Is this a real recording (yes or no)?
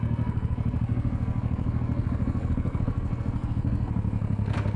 no